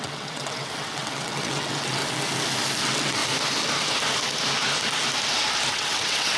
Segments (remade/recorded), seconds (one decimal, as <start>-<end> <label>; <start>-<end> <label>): 0.0-2.0 remade; 2.0-2.8 recorded; 2.8-3.2 remade; 3.2-5.7 recorded; 5.7-6.4 remade